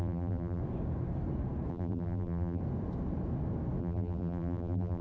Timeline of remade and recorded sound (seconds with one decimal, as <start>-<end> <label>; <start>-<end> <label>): 0.0-0.6 remade; 0.6-1.7 recorded; 1.7-2.6 remade; 2.6-3.8 recorded; 3.8-5.0 remade